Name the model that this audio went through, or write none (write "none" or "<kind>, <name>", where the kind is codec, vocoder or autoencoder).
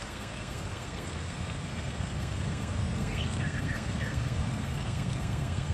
codec, SNAC